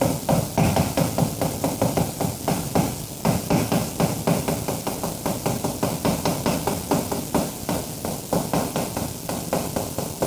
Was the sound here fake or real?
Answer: real